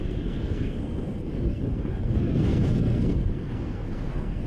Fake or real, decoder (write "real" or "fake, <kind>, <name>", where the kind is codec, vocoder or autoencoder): fake, codec, SNAC